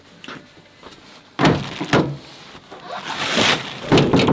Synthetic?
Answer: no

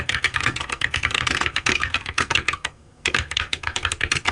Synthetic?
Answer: yes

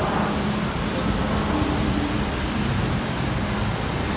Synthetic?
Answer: no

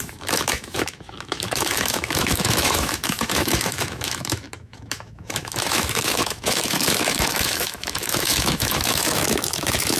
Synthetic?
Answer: yes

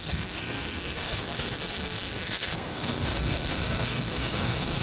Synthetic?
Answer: yes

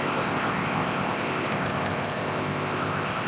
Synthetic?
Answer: yes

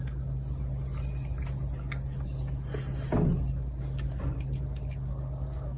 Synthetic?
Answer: no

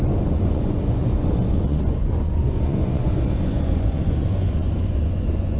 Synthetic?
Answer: yes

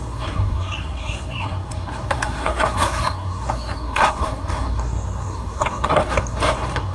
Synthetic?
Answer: yes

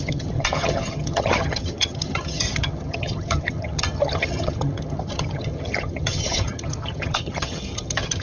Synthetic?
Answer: yes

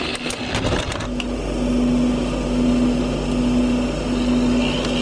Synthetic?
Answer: no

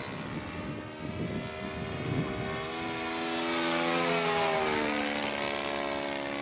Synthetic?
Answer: no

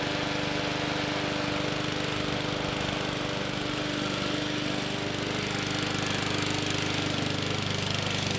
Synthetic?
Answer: no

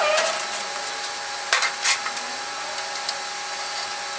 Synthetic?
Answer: no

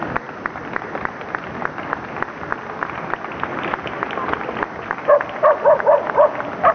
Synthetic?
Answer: no